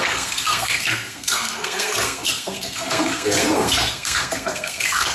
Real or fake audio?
fake